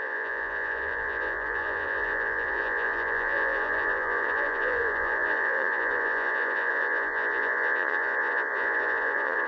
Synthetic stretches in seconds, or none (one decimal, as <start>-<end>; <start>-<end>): 0.0-9.5